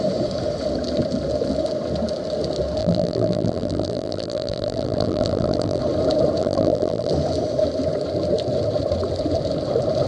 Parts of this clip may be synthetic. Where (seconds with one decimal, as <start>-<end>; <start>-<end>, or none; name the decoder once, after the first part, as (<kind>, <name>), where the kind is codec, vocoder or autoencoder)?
2.8-5.8 (vocoder, BigVGAN v2); 6.4-7.1